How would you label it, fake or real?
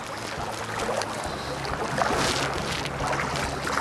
real